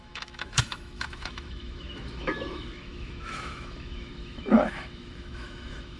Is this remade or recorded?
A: remade